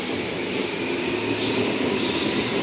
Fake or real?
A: real